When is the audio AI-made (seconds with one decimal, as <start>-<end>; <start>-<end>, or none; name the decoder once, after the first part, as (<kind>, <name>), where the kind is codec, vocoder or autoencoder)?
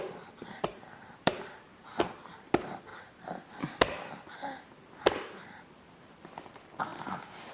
1.0-1.8 (vocoder, BigVGAN v2)